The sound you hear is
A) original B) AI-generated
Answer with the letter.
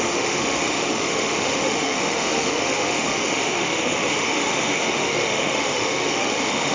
B